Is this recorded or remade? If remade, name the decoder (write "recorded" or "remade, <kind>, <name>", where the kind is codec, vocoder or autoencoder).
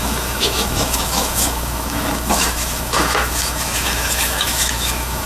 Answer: remade, autoencoder, DAC-VAE